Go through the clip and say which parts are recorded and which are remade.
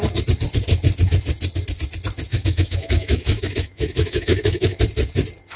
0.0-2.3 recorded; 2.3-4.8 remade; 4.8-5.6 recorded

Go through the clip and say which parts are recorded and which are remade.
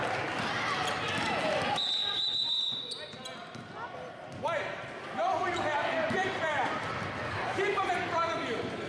0.0-2.0 recorded; 2.0-2.7 remade; 2.7-5.4 recorded; 5.4-7.9 remade; 7.9-8.9 recorded